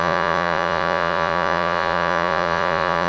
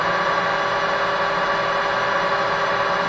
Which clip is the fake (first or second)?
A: first